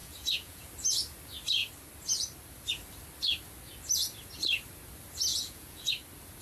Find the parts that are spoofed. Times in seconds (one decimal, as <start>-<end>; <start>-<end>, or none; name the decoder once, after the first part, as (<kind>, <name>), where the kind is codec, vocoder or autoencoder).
0.0-0.6 (vocoder, Vocos); 5.3-5.9